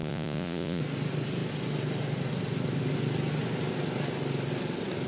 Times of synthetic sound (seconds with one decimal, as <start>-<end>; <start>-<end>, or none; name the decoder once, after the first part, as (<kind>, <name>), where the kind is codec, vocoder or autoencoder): 0.0-0.8 (vocoder, Vocos)